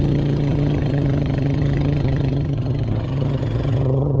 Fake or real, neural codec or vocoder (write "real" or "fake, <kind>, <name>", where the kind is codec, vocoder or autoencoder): fake, vocoder, HiFi-GAN